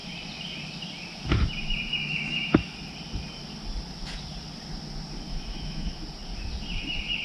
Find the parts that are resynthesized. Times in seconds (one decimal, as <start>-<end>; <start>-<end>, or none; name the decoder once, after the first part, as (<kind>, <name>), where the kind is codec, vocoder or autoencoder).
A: 1.9-2.7 (autoencoder, DAC-VAE); 5.3-6.0